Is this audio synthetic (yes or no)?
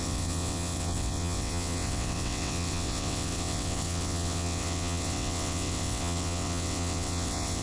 yes